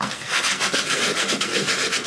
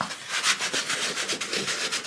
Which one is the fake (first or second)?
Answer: first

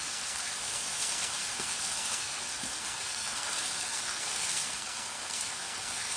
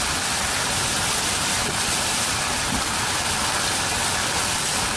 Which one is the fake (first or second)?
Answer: first